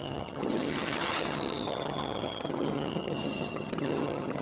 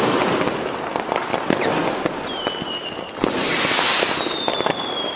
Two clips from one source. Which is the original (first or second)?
second